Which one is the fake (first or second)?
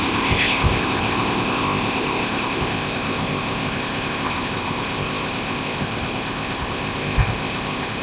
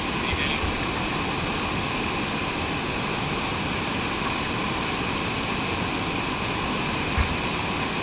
first